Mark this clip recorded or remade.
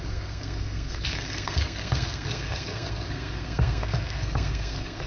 remade